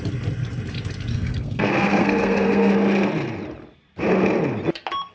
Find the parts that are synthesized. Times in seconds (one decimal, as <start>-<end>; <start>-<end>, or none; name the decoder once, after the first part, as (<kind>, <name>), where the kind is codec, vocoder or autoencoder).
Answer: 1.1-2.7 (codec, SNAC)